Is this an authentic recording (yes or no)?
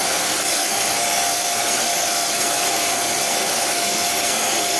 no